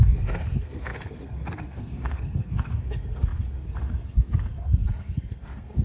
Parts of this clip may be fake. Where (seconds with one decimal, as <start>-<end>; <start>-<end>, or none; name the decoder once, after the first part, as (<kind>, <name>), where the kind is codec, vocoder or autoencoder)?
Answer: 0.0-5.8 (codec, SNAC)